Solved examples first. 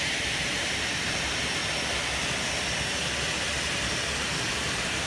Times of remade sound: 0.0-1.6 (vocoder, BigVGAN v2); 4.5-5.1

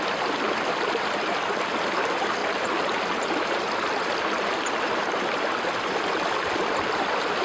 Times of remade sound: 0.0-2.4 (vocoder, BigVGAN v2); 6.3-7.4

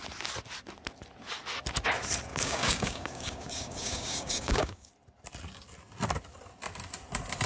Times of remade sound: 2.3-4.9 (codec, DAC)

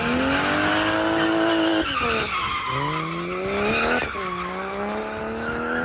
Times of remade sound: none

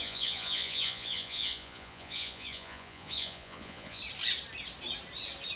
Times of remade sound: 0.0-4.0 (vocoder, Vocos)

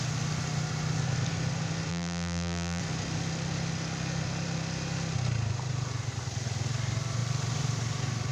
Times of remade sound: 1.9-2.8 (vocoder, BigVGAN v2)